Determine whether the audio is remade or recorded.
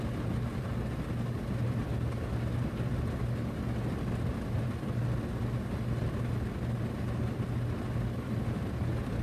recorded